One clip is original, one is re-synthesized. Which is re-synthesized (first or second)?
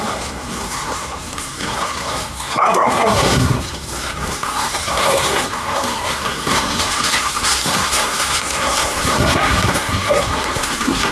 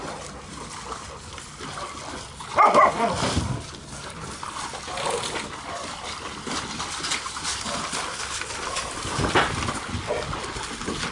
first